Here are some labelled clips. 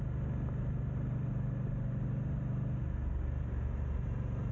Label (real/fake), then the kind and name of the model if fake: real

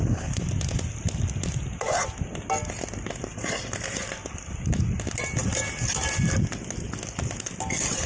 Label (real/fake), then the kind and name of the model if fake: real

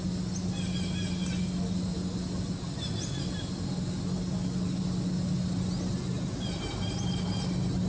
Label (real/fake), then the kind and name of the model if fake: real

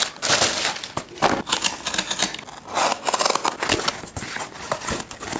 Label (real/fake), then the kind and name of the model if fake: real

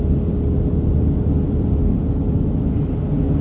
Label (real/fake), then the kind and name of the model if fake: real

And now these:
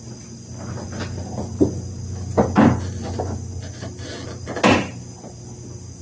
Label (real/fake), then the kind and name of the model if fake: real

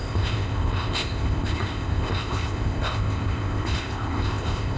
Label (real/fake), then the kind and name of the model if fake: fake, codec, ZipCodec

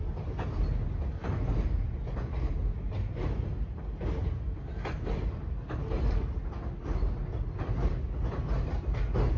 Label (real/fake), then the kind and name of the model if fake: real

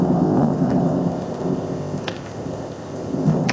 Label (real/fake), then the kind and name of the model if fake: fake, codec, ZipCodec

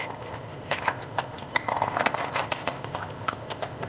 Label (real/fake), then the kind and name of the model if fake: fake, codec, ZipCodec